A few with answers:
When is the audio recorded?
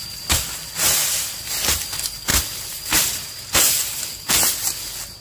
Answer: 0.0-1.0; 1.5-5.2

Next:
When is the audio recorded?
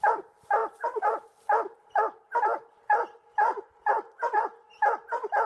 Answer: 0.0-0.6; 1.3-5.5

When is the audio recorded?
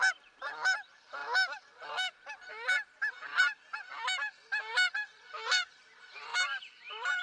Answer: 0.0-4.7; 5.8-6.3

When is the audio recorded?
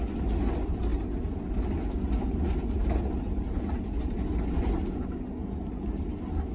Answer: 0.0-6.5